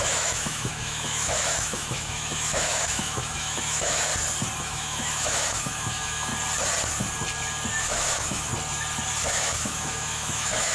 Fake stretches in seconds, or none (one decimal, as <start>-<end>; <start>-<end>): 0.0-4.1; 4.6-6.3; 7.8-8.5; 9.3-10.7

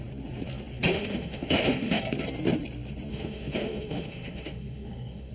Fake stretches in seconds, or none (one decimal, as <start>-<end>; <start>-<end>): 0.9-2.0; 3.1-5.3

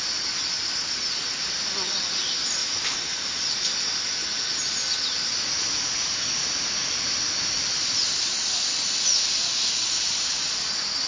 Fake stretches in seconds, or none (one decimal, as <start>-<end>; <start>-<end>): 0.4-1.0; 2.6-3.6; 6.4-7.2

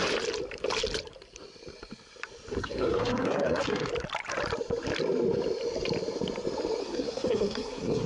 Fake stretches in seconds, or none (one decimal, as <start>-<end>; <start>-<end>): 2.6-3.9; 6.8-8.1

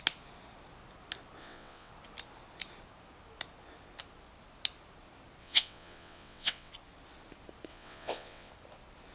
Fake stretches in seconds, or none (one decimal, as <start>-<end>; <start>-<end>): 1.4-1.9; 5.4-6.7; 7.7-8.5

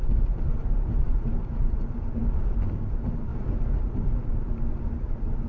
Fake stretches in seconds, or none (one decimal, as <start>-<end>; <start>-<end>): 0.0-2.2; 2.7-3.3; 3.8-5.5

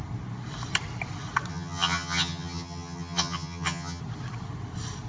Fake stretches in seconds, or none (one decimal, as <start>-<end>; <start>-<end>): 1.5-4.0

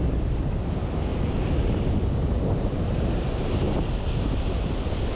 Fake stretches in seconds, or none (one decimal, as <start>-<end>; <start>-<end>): 1.1-3.6